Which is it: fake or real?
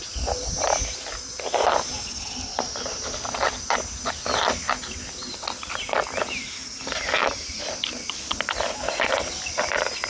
real